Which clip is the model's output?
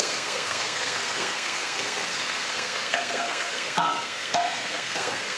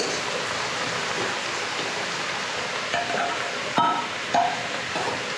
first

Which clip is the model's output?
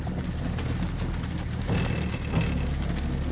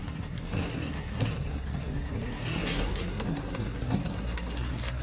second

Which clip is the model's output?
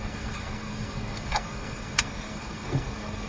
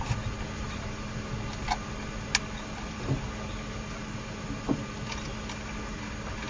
first